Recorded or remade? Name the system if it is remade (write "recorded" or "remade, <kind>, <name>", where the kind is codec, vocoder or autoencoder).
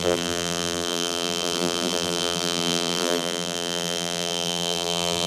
remade, vocoder, BigVGAN v2